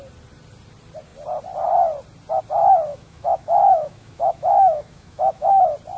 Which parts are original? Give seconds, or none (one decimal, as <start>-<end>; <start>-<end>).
0.0-2.9; 5.5-6.0